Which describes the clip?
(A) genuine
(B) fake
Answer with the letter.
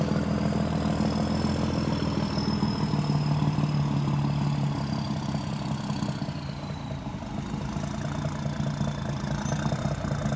A